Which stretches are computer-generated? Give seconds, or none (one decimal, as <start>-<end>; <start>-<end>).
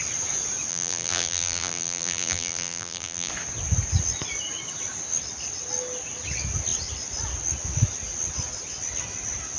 0.7-3.3